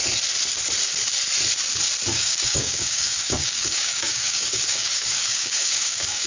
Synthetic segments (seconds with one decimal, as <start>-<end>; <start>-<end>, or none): 2.1-6.3